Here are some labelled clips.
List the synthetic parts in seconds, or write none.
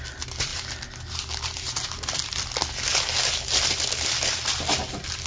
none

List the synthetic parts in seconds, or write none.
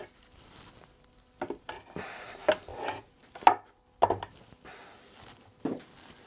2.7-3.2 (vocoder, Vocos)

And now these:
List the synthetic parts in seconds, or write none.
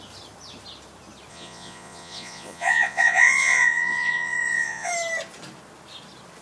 1.3-4.9 (vocoder, Vocos)